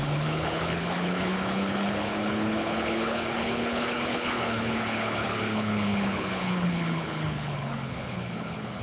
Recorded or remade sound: remade